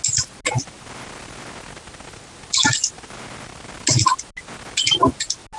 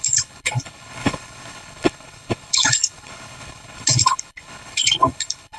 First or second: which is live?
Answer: first